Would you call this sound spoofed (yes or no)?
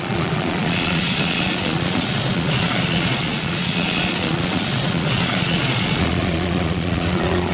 yes